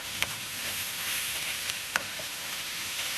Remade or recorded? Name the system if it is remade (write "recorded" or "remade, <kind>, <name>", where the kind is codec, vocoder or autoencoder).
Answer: remade, autoencoder, DAC-VAE